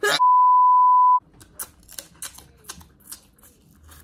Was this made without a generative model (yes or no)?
yes